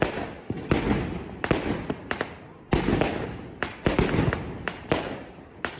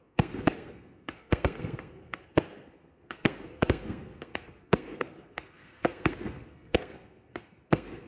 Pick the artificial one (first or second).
second